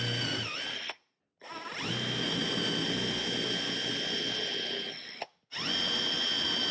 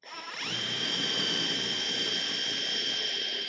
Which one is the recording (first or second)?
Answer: first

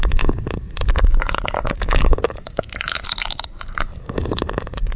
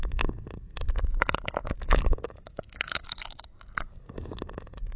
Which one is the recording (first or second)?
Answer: second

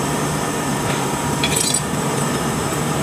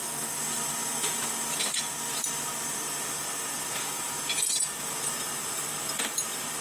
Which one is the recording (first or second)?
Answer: second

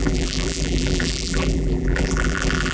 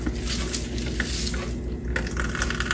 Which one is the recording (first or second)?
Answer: second